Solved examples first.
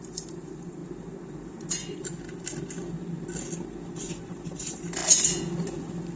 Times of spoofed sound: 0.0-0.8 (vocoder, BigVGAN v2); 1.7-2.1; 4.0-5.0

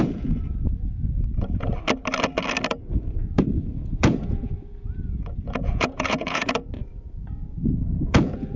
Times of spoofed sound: 0.0-1.7 (vocoder, Vocos); 2.7-8.6

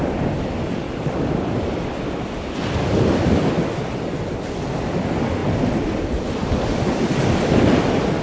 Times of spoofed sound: none

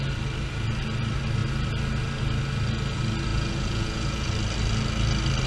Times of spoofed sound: 3.3-4.3 (vocoder, Vocos)

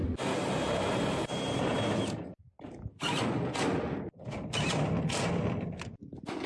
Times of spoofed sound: none